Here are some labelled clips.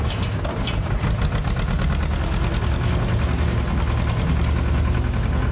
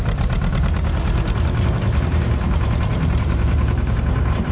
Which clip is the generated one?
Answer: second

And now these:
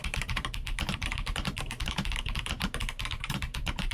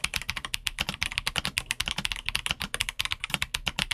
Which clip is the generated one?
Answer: first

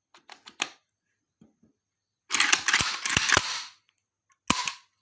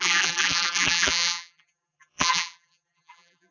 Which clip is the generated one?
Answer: second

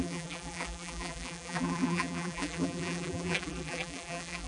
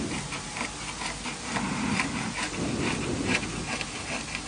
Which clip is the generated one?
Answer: first